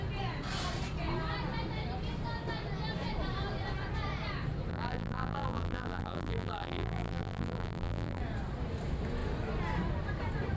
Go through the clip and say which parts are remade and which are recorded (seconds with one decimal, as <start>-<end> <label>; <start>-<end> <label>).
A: 0.0-4.7 recorded; 4.7-8.2 remade; 8.2-10.6 recorded